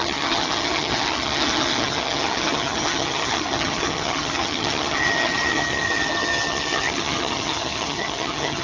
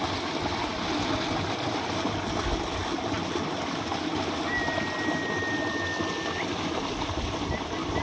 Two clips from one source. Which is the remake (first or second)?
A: first